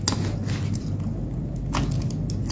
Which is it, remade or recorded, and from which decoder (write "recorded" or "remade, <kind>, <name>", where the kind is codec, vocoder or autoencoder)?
recorded